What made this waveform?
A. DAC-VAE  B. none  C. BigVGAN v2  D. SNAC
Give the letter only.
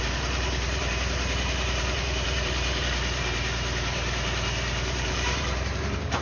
C